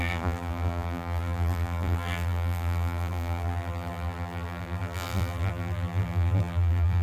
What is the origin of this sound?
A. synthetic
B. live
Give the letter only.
A